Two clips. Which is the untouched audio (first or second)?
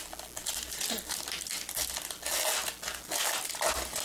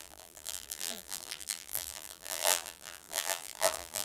first